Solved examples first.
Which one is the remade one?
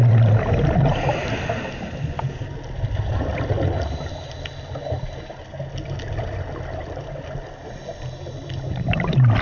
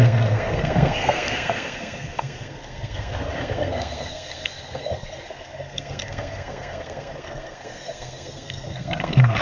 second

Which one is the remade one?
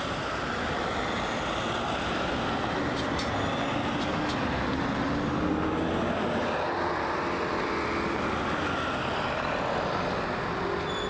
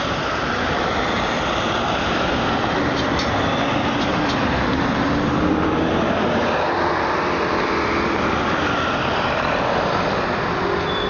second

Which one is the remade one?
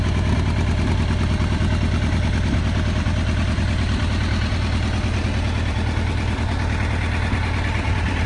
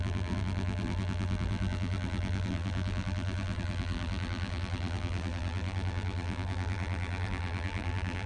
second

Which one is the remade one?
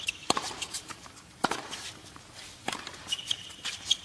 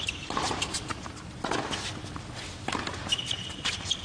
first